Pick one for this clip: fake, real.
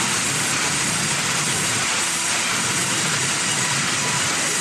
real